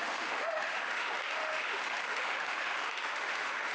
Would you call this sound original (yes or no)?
no